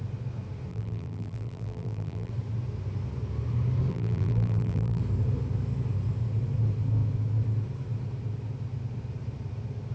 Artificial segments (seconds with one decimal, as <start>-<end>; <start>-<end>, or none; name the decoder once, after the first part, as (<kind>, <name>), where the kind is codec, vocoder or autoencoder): 0.7-2.3 (vocoder, BigVGAN v2); 3.9-5.0